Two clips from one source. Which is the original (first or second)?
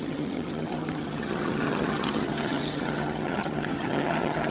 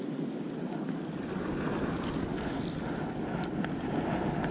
second